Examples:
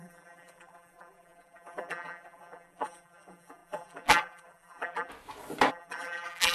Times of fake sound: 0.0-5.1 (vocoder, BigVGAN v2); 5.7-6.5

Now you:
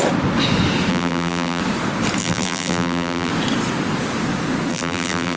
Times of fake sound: 0.9-1.6 (vocoder, BigVGAN v2); 2.2-3.3; 4.7-5.4

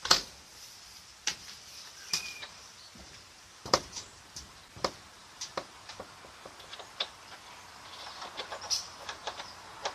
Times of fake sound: 0.5-4.5 (vocoder, BigVGAN v2); 5.2-6.0

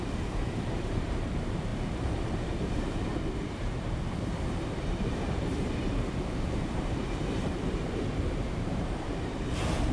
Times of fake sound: 0.0-9.9 (vocoder, BigVGAN v2)

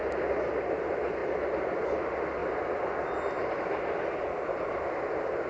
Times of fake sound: none

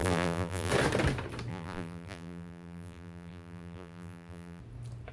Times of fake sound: 0.0-0.7 (vocoder, BigVGAN v2); 1.5-4.6

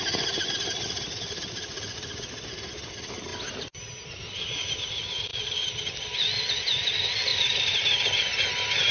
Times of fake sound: 5.3-5.8 (vocoder, BigVGAN v2); 7.3-7.9

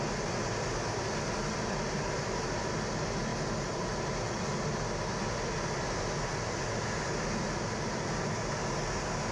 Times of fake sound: 3.3-4.0 (vocoder, BigVGAN v2)